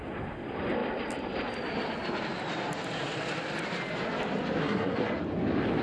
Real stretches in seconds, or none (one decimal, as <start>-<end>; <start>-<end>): 0.0-4.6; 5.1-5.8